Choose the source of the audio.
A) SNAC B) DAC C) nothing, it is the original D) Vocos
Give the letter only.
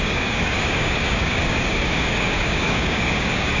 B